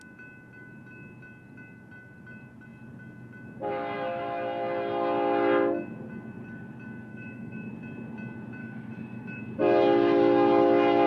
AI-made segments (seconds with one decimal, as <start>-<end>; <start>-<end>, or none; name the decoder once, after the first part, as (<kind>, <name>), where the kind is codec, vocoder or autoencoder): 7.1-7.7 (autoencoder, DAC-VAE); 8.6-9.4